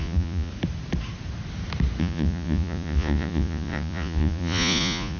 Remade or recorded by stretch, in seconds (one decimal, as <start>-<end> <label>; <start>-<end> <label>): 0.0-0.5 remade; 0.5-2.0 recorded; 2.0-5.2 remade